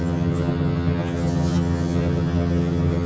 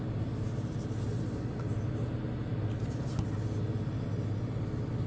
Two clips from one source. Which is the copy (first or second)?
first